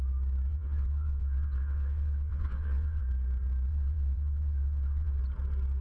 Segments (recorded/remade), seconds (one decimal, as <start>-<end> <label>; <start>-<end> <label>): 0.0-0.5 recorded; 0.5-3.0 remade; 3.0-3.7 recorded; 3.7-5.2 remade; 5.2-5.8 recorded